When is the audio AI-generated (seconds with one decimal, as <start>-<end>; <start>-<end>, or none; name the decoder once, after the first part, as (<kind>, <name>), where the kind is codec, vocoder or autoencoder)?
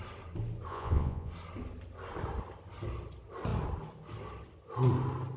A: 0.7-1.3 (vocoder, Vocos)